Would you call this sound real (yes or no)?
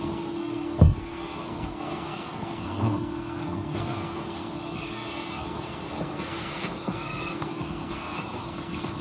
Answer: no